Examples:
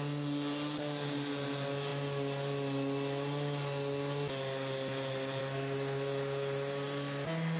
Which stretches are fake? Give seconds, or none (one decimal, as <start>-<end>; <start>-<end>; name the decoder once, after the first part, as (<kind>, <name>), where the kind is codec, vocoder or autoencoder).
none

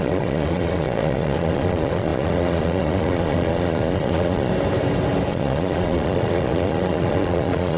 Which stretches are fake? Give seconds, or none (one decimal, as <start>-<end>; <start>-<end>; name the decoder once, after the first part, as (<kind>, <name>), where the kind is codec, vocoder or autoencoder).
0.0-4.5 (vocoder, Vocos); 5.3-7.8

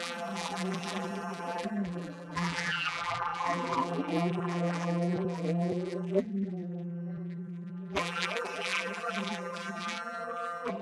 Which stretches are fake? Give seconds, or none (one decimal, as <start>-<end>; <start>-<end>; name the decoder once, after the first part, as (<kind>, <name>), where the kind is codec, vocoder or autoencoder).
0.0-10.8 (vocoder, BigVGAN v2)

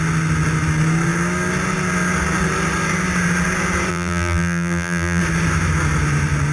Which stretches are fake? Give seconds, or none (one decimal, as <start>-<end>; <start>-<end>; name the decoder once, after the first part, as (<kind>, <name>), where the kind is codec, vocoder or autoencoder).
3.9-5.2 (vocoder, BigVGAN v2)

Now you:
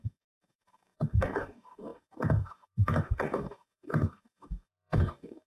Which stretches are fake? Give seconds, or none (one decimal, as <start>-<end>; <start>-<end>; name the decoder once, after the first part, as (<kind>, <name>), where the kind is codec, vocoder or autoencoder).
0.0-5.5 (codec, DAC)

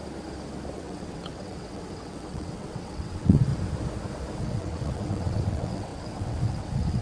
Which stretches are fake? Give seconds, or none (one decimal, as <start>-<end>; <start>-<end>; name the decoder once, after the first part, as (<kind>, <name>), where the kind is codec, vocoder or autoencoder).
0.7-3.5 (vocoder, WaveNeXt); 4.4-7.0

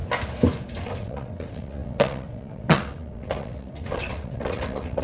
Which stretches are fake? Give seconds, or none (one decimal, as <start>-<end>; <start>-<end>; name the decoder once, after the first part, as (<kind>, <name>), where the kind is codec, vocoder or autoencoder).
0.8-5.0 (vocoder, WaveNeXt)

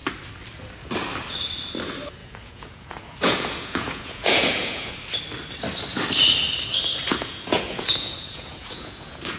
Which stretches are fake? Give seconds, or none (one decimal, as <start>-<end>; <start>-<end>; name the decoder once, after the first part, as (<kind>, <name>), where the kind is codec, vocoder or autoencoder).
2.2-4.9 (vocoder, Vocos); 7.1-9.4